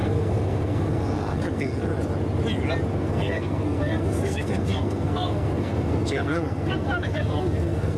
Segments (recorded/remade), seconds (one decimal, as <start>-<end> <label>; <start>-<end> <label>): 0.0-1.9 remade; 1.9-3.0 recorded; 3.0-8.0 remade